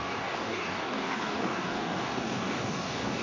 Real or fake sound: fake